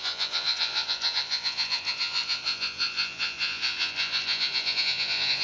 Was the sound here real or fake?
fake